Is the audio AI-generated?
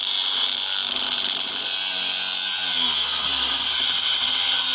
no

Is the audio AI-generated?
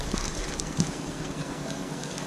yes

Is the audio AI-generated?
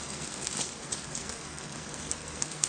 yes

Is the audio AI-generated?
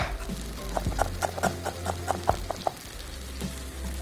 no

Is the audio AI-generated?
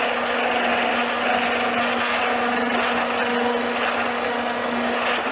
no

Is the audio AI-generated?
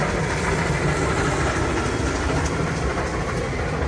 no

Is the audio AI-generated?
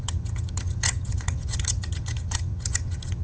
yes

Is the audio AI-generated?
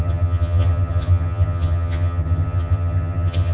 yes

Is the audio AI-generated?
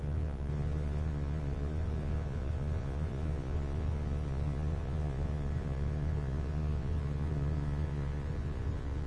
yes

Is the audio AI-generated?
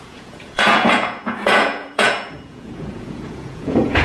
yes